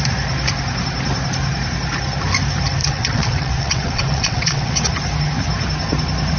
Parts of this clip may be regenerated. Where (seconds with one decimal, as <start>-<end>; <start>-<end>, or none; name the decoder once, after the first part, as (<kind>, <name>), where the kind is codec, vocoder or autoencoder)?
2.8-4.9 (vocoder, WaveNeXt)